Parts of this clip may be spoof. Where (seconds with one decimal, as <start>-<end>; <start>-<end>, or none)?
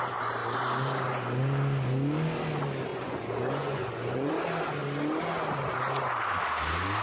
2.9-4.3